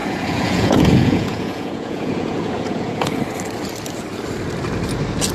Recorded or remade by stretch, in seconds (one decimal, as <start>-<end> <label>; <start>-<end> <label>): 0.0-3.2 remade; 3.2-5.3 recorded